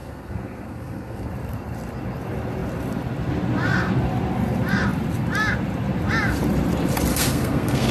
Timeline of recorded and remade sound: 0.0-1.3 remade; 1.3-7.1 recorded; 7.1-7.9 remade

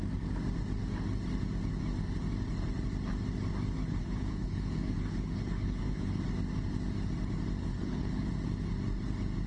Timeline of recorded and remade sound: 0.0-3.8 recorded; 3.8-6.2 remade; 6.2-7.6 recorded; 7.6-8.3 remade; 8.3-9.5 recorded

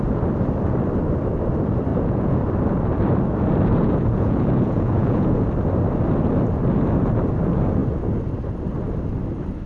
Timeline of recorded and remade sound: 0.0-1.9 recorded; 1.9-2.4 remade; 2.4-3.7 recorded; 3.7-5.4 remade; 5.4-9.7 recorded

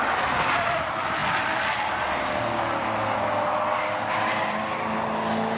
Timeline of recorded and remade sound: 0.0-5.6 recorded

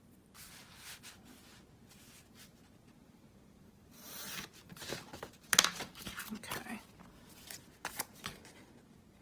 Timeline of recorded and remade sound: 0.0-3.0 recorded; 3.0-6.8 remade; 6.8-9.2 recorded

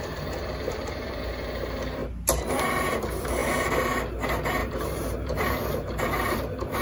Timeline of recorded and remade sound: 0.0-0.4 recorded; 0.4-1.2 remade; 1.2-4.6 recorded; 4.6-6.0 remade; 6.0-6.8 recorded